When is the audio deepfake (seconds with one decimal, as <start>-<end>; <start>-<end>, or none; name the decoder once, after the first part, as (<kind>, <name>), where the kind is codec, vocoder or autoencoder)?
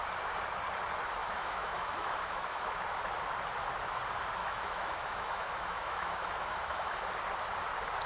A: 1.2-2.8 (autoencoder, DAC-VAE); 4.4-7.1